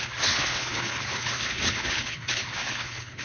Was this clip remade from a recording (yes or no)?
yes